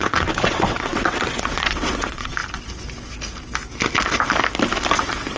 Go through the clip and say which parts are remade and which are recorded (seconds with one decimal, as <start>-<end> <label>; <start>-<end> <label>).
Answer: 0.0-2.4 remade; 2.4-4.9 recorded; 4.9-5.4 remade